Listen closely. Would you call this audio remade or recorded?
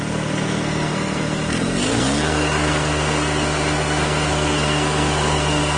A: remade